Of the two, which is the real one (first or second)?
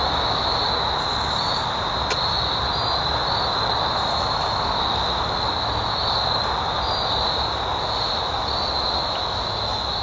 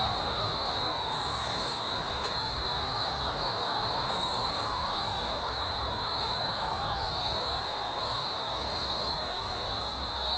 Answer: first